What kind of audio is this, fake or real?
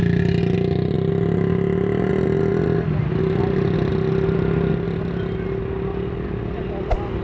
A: real